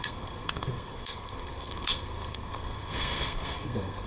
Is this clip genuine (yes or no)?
no